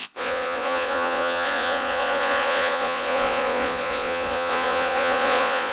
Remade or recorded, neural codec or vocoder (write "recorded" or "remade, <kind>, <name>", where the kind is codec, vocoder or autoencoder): remade, vocoder, Vocos